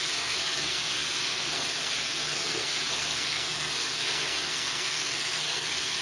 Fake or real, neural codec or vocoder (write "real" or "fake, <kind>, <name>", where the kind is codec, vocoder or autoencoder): fake, codec, SNAC